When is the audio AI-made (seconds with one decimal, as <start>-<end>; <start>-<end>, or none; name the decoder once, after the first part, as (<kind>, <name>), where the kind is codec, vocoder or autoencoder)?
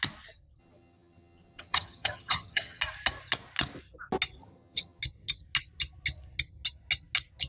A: 0.6-2.8 (vocoder, HiFi-GAN); 4.4-5.0